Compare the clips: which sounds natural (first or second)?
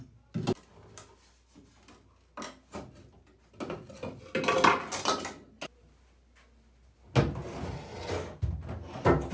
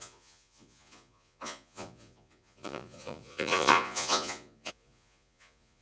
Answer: first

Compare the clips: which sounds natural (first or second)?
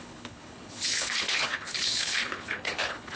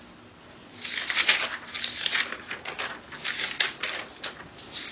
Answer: second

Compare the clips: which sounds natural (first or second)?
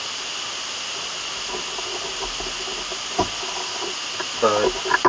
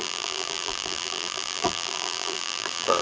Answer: first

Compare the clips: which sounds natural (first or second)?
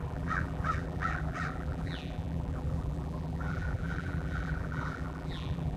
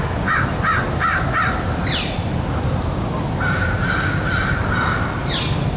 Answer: second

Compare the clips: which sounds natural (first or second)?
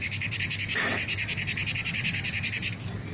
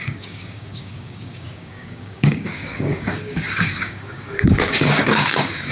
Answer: first